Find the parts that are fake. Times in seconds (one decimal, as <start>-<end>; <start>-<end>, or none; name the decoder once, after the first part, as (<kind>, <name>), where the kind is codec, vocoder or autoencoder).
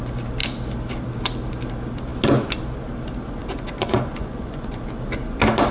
3.4-4.8 (vocoder, Vocos)